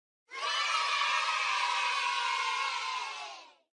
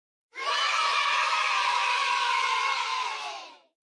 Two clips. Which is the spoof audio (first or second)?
second